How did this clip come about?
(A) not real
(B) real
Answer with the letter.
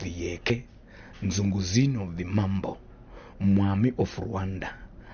B